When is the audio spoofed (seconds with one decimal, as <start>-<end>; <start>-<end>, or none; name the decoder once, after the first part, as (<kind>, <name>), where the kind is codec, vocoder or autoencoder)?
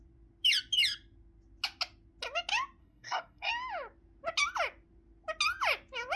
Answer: 2.8-3.5 (codec, SNAC)